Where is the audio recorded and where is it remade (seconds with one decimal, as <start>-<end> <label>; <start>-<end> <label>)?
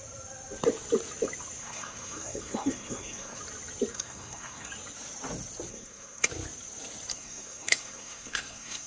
0.0-1.6 recorded; 1.6-3.4 remade; 3.4-3.9 recorded; 3.9-4.7 remade; 4.7-5.7 recorded; 5.7-6.3 remade; 6.3-7.1 recorded; 7.1-8.9 remade